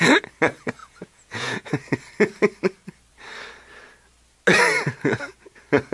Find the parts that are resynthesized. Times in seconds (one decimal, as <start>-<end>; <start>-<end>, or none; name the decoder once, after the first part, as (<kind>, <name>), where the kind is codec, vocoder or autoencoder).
0.8-1.7 (vocoder, Vocos)